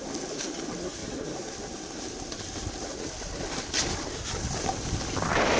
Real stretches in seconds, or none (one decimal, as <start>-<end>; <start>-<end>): 0.0-5.6